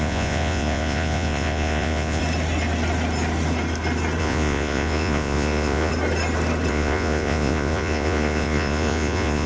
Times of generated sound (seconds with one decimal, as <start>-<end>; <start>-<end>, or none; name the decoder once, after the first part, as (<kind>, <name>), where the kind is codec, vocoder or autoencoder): 0.0-2.2 (vocoder, Vocos); 4.2-5.9; 6.7-9.5